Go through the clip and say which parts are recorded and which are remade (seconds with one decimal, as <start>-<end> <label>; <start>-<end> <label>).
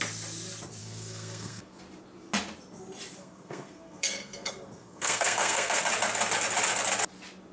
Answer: 0.0-0.8 recorded; 0.8-1.8 remade; 1.8-3.2 recorded; 3.2-5.8 remade; 5.8-7.5 recorded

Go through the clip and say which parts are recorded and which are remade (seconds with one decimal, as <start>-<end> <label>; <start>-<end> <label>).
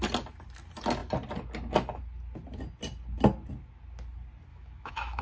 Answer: 0.0-4.5 recorded; 4.5-5.2 remade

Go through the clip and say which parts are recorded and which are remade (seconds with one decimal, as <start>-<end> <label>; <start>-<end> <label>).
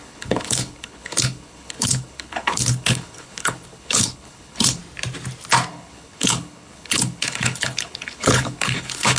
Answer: 0.0-4.8 remade; 4.8-5.7 recorded; 5.7-9.2 remade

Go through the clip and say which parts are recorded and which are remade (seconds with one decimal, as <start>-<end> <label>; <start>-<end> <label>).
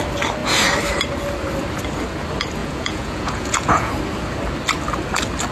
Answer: 0.0-2.6 recorded; 2.6-3.9 remade; 3.9-5.5 recorded